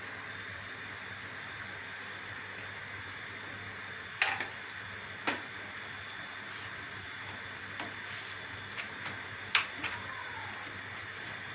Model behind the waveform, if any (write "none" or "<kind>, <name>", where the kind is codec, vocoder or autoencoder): none